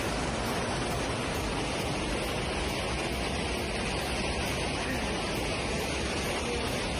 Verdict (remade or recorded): recorded